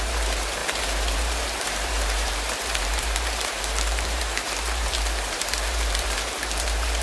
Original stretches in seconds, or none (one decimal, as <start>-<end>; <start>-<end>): none